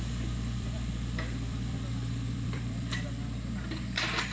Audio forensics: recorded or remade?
remade